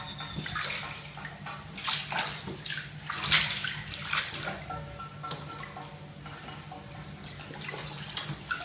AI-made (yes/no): no